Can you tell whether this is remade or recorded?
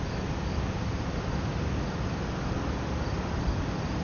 recorded